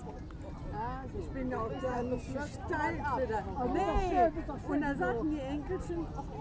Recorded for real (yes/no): yes